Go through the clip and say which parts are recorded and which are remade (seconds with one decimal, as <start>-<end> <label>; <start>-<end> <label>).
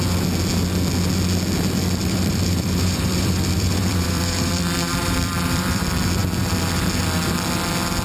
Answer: 0.0-2.0 recorded; 2.0-5.8 remade; 5.8-8.0 recorded